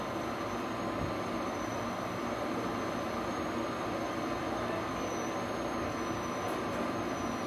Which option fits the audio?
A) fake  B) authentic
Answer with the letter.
B